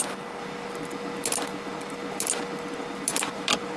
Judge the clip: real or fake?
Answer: real